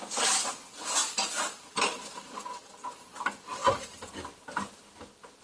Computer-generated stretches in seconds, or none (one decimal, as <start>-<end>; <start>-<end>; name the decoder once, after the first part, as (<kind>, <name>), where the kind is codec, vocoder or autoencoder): none